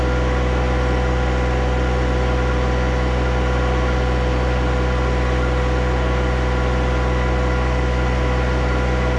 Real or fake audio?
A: real